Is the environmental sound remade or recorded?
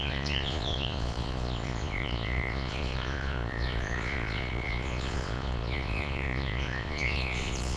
remade